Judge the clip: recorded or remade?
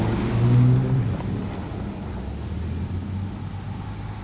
recorded